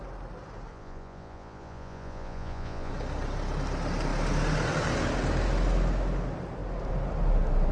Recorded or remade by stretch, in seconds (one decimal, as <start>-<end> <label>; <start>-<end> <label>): 0.0-0.7 recorded; 0.7-2.9 remade; 2.9-7.7 recorded